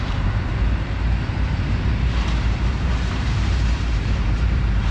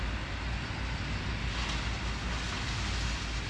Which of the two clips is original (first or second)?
second